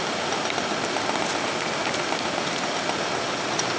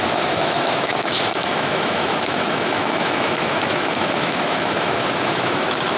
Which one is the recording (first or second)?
first